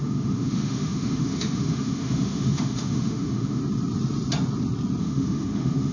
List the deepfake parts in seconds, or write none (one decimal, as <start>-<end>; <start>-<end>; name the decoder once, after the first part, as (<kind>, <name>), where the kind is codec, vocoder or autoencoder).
0.0-3.6 (autoencoder, DAC-VAE); 5.0-5.9